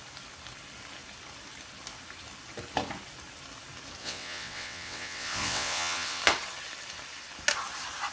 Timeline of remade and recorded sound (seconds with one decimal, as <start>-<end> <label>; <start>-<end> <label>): 0.0-4.0 recorded; 4.0-6.2 remade; 6.2-8.1 recorded